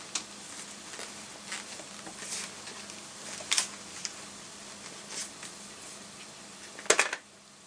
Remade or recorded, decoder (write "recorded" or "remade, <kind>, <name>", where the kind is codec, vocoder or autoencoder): recorded